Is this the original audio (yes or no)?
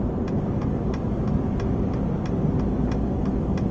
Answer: yes